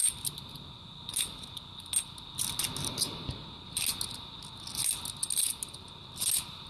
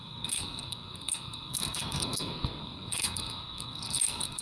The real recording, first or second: first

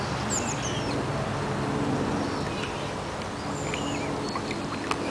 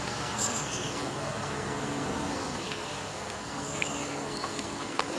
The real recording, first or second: first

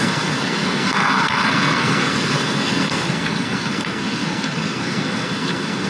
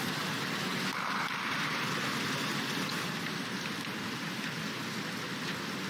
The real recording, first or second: second